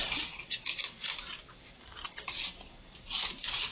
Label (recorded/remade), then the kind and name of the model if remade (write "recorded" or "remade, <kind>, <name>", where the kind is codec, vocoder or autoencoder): recorded